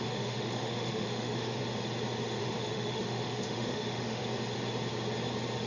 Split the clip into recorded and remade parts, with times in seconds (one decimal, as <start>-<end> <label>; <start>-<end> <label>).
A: 0.0-1.6 remade; 1.6-2.4 recorded; 2.4-4.2 remade; 4.2-5.7 recorded